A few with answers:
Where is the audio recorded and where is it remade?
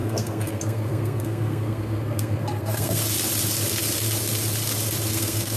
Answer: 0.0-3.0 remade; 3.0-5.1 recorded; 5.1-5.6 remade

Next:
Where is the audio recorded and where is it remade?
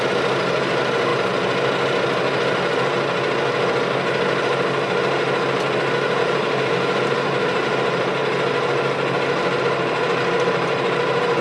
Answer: 0.0-1.1 remade; 1.1-6.2 recorded; 6.2-8.2 remade; 8.2-9.6 recorded; 9.6-11.4 remade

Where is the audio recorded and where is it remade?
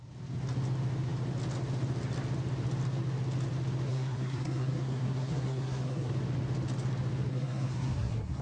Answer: 0.0-3.9 recorded; 3.9-6.1 remade; 6.1-7.3 recorded; 7.3-8.4 remade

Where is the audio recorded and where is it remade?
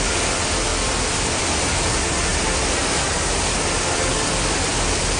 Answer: 0.0-5.2 recorded